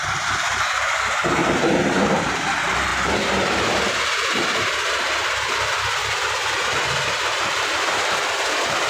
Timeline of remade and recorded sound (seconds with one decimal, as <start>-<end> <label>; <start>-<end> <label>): 0.0-1.4 recorded; 1.4-2.5 remade; 2.5-6.0 recorded; 6.0-8.3 remade; 8.3-8.9 recorded